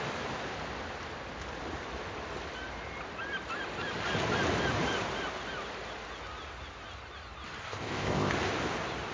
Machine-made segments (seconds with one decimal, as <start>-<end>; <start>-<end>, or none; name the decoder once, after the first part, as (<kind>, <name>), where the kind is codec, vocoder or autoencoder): 7.6-8.3 (codec, ZipCodec)